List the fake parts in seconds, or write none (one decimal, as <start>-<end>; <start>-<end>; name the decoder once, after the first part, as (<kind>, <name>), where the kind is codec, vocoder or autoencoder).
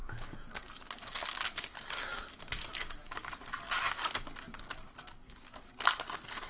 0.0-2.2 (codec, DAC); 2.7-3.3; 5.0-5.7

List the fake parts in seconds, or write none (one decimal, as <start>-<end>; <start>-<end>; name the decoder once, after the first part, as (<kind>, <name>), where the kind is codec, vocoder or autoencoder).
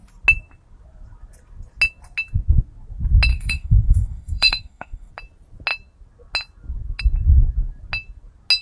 3.3-5.1 (autoencoder, DAC-VAE)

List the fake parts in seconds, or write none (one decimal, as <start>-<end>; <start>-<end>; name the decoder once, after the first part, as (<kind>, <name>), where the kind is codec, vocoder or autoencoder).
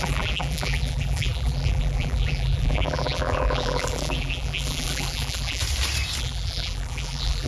0.0-5.6 (vocoder, BigVGAN v2); 6.2-7.5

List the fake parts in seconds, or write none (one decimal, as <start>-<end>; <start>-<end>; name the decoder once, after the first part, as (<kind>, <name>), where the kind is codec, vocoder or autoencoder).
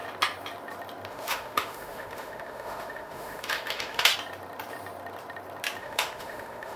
1.1-4.1 (autoencoder, DAC-VAE); 5.8-6.8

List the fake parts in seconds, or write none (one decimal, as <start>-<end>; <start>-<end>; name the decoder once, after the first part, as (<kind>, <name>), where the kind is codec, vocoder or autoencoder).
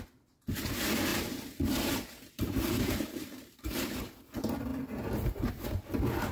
1.1-4.0 (vocoder, BigVGAN v2); 4.7-5.5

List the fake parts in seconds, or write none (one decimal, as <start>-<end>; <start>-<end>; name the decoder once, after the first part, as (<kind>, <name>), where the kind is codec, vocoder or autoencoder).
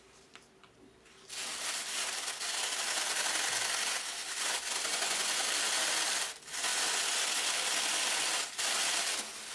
4.9-5.4 (vocoder, Vocos)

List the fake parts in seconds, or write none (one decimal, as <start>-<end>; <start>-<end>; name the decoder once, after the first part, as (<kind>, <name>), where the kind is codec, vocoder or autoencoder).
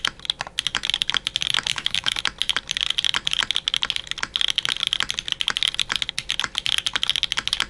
1.7-2.2 (codec, DAC)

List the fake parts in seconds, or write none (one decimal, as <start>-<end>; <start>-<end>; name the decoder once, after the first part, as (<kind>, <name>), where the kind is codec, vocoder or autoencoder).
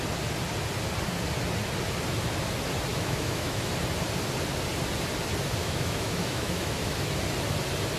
2.9-3.7 (autoencoder, DAC-VAE); 5.6-7.1